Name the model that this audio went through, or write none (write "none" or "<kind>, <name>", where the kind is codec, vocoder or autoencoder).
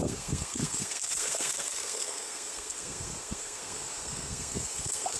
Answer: codec, SNAC